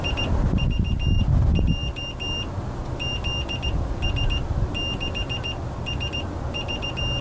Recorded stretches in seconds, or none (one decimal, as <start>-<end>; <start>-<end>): 0.0-7.2